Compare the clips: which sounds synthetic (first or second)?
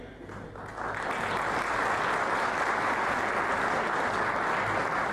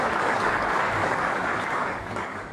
second